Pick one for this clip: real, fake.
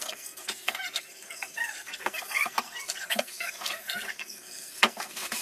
fake